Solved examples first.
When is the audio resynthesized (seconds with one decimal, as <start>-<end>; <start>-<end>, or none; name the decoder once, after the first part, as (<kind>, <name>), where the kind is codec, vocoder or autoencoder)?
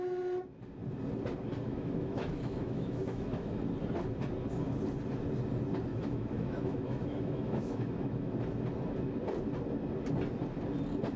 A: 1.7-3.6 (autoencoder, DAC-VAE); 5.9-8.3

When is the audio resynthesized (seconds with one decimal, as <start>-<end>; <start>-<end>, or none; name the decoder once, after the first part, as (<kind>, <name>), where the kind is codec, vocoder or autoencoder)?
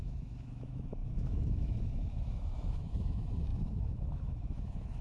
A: 0.0-5.0 (autoencoder, DAC-VAE)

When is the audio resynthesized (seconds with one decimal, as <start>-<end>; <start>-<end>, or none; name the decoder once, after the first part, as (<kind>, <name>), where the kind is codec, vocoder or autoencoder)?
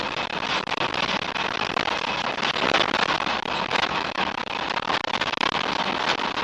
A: 3.7-4.4 (autoencoder, DAC-VAE)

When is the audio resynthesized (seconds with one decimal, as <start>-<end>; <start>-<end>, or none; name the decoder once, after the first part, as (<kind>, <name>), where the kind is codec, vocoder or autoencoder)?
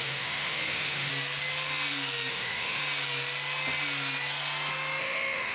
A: 0.0-1.1 (autoencoder, DAC-VAE); 2.3-2.8; 5.0-5.5